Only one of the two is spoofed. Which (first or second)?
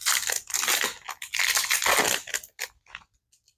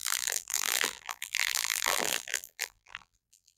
second